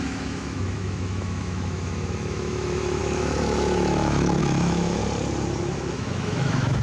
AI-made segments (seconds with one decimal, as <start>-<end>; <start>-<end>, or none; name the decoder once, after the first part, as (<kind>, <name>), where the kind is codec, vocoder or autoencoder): 0.0-5.0 (autoencoder, DAC-VAE); 5.6-6.8